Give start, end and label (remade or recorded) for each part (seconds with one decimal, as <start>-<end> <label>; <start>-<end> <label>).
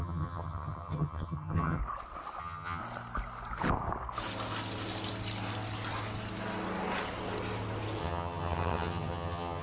0.0-1.8 remade; 1.8-2.4 recorded; 2.4-2.8 remade; 2.8-8.0 recorded; 8.0-9.6 remade